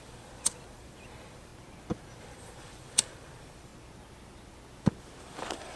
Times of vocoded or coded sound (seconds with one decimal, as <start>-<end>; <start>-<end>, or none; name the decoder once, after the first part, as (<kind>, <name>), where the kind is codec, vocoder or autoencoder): 0.0-1.5 (vocoder, BigVGAN v2); 2.2-3.7; 5.2-5.8